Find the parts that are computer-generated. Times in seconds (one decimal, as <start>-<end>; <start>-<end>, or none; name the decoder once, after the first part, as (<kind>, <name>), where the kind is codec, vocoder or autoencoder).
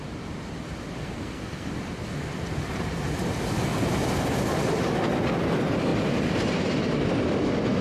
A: 1.0-1.7 (codec, SNAC)